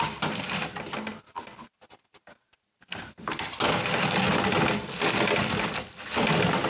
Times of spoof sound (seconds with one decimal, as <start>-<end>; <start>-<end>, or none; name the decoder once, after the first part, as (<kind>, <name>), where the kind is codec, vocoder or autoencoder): none